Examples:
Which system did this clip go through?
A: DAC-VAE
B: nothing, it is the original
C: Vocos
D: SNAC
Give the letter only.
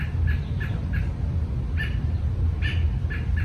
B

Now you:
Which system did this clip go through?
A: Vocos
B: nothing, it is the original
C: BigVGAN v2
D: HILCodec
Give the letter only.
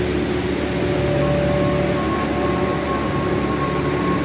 B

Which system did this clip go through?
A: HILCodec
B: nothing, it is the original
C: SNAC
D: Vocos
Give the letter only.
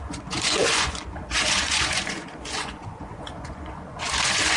D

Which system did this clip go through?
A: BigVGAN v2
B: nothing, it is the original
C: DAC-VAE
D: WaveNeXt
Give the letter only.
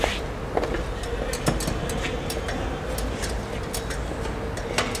B